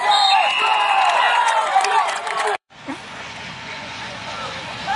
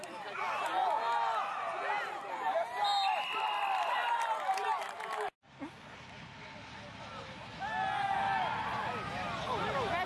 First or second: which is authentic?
second